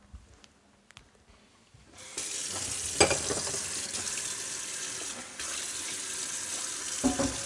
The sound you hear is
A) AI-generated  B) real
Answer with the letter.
B